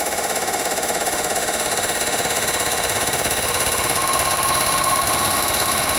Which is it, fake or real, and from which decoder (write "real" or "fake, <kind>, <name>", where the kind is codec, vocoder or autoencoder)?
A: fake, autoencoder, DAC-VAE